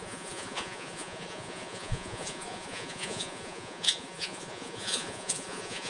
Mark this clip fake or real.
fake